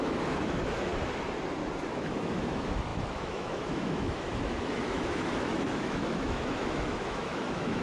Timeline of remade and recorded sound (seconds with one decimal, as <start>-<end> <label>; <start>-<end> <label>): 0.0-0.9 remade; 0.9-1.9 recorded; 1.9-7.8 remade

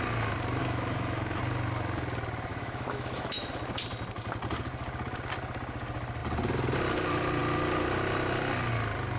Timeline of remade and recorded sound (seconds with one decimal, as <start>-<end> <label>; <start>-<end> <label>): 0.0-0.6 recorded; 0.6-1.4 remade; 1.4-2.5 recorded; 2.5-3.5 remade; 3.5-9.2 recorded

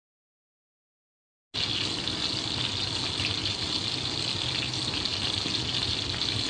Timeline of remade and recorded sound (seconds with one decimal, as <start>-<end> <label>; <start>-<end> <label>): 0.0-6.5 recorded

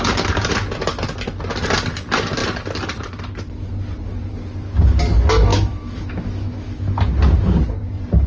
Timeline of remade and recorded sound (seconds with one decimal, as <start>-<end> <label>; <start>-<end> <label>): 0.0-5.5 recorded; 5.5-7.0 remade; 7.0-8.3 recorded

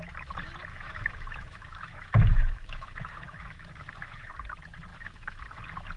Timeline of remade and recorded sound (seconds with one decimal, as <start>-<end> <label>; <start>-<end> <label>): 0.0-0.7 recorded; 0.7-4.3 remade; 4.3-4.9 recorded; 4.9-5.4 remade; 5.4-6.0 recorded

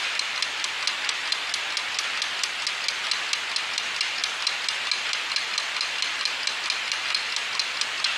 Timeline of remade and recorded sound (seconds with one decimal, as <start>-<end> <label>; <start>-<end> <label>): 0.0-8.2 recorded